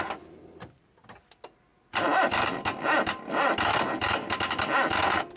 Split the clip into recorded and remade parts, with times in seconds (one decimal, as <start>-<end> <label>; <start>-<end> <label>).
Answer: 0.0-3.7 recorded; 3.7-4.5 remade; 4.5-5.4 recorded

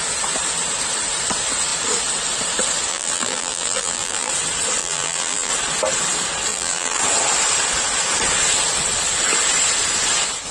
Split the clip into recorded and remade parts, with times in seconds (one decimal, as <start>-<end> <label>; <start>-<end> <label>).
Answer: 0.0-2.9 recorded; 2.9-4.3 remade; 4.3-4.8 recorded; 4.8-5.5 remade; 5.5-6.5 recorded; 6.5-7.0 remade; 7.0-10.5 recorded

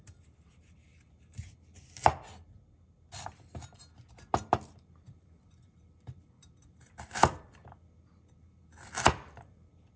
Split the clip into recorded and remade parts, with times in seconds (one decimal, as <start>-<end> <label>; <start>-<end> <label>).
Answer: 0.0-0.9 remade; 0.9-4.3 recorded; 4.3-7.6 remade; 7.6-9.1 recorded; 9.1-10.0 remade